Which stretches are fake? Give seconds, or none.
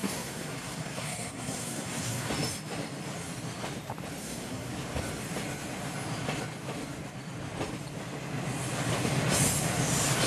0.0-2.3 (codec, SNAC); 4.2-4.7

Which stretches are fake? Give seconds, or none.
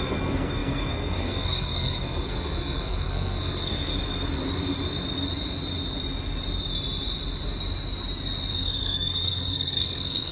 0.0-3.9 (codec, SNAC); 8.5-10.3